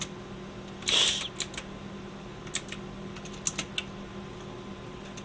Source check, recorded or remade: recorded